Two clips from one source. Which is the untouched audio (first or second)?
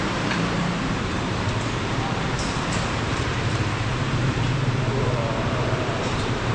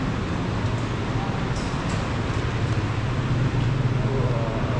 second